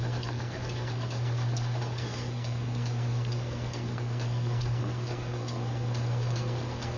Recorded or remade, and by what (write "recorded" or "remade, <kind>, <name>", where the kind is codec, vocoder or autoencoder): remade, codec, SNAC